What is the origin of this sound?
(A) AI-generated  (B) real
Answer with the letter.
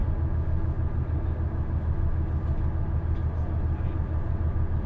B